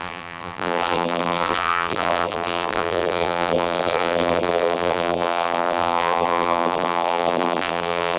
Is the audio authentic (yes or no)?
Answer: no